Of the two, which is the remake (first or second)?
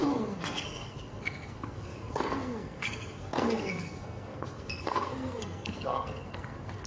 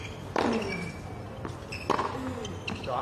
first